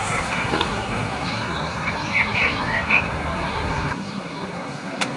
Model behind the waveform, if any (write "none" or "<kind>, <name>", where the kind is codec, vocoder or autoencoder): codec, SNAC